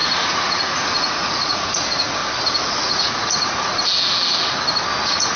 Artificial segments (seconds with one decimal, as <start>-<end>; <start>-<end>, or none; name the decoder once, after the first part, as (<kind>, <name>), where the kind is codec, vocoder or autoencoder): 0.0-2.2 (vocoder, Vocos); 2.8-3.7; 5.0-5.4